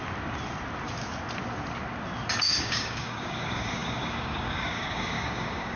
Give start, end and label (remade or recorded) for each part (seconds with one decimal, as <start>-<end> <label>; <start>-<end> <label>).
0.0-2.4 recorded; 2.4-5.8 remade